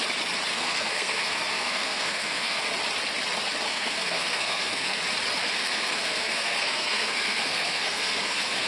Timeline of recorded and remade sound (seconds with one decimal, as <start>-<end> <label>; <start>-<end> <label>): 0.0-0.5 recorded; 0.5-2.6 remade; 2.6-3.7 recorded; 3.7-5.0 remade; 5.0-5.4 recorded; 5.4-8.7 remade